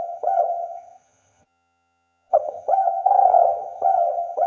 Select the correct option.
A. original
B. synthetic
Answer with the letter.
B